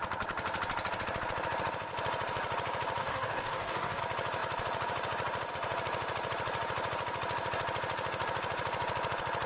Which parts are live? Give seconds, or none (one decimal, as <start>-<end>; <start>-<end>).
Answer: 0.0-3.0; 4.0-9.5